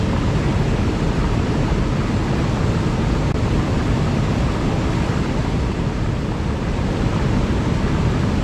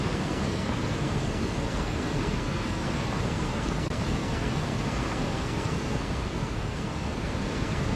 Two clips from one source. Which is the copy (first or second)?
second